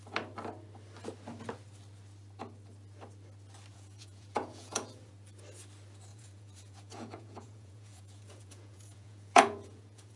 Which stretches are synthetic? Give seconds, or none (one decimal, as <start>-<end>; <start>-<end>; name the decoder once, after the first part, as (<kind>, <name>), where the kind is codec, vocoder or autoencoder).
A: 3.7-5.1 (vocoder, Vocos); 6.1-10.2